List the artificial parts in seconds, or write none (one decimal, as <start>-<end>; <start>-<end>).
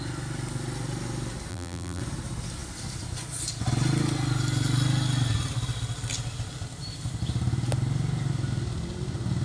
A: 1.5-2.0